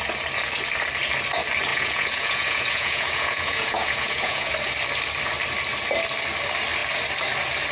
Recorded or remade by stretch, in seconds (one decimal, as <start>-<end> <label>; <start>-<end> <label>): 0.0-1.7 recorded; 1.7-4.5 remade; 4.5-7.7 recorded